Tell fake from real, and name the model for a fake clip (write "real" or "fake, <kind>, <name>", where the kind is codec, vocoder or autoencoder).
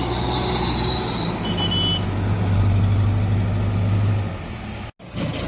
real